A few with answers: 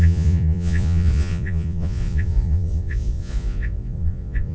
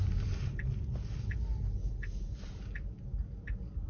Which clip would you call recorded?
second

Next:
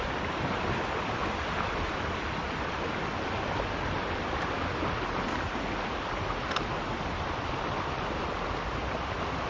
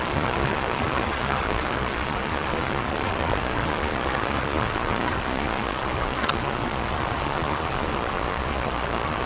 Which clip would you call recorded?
first